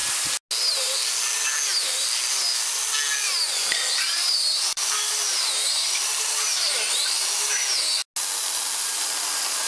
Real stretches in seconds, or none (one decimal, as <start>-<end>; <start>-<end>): 0.0-3.6; 7.4-9.7